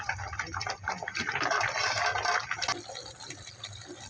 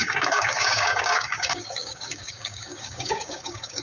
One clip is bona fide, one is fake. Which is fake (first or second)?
second